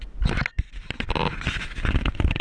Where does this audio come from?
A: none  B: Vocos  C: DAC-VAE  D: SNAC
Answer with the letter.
A